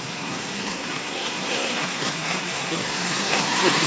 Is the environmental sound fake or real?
fake